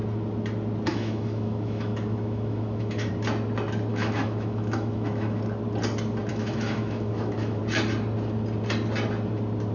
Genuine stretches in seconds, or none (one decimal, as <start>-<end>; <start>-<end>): 0.0-0.9; 3.1-3.9; 5.4-6.3; 7.6-9.7